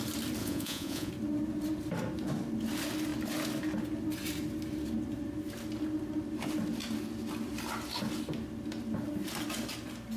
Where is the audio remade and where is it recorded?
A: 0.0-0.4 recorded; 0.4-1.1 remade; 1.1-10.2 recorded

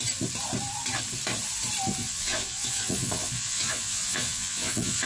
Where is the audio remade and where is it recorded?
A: 0.0-2.0 recorded; 2.0-5.1 remade

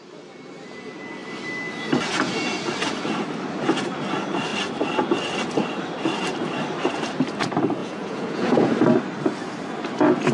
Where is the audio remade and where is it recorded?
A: 0.0-7.8 recorded; 7.8-8.7 remade; 8.7-10.3 recorded

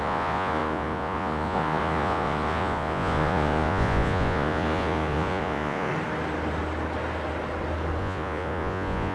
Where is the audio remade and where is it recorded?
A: 0.0-5.9 remade; 5.9-8.0 recorded; 8.0-9.1 remade

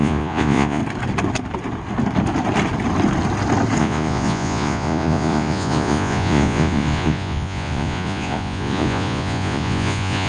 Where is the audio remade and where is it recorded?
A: 0.0-0.8 remade; 0.8-3.8 recorded; 3.8-10.3 remade

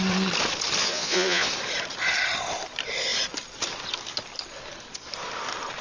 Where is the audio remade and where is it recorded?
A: 0.0-0.8 recorded; 0.8-1.5 remade; 1.5-5.8 recorded

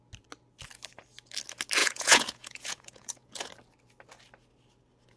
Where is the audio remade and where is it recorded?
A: 0.0-1.8 recorded; 1.8-3.5 remade; 3.5-5.2 recorded